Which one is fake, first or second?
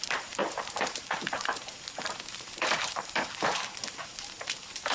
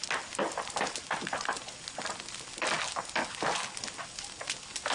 first